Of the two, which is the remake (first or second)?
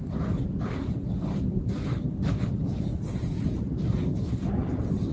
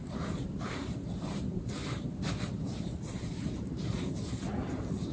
second